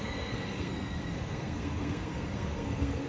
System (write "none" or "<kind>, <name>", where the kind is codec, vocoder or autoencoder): codec, SNAC